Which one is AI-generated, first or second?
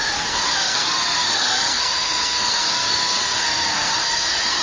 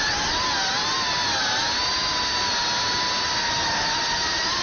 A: first